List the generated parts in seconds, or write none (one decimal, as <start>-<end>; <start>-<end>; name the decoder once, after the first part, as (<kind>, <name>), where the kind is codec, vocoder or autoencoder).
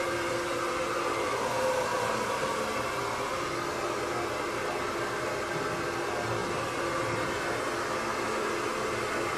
1.9-2.6 (vocoder, BigVGAN v2)